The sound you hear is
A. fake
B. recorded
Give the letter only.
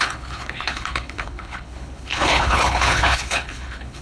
A